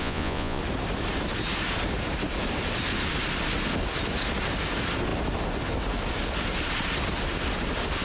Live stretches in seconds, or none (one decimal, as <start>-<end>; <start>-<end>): 0.6-8.0